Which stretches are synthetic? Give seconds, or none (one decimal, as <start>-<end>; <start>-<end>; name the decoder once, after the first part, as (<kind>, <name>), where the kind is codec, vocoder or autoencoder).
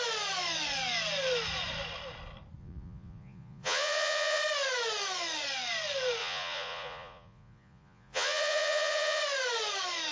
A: 2.6-4.4 (vocoder, Vocos); 6.2-9.2